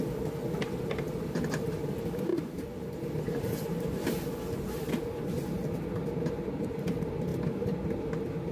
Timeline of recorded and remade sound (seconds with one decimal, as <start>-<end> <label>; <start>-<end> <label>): 0.0-8.5 recorded

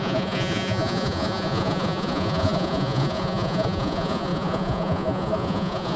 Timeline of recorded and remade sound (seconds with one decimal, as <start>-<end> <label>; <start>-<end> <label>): 0.0-6.0 remade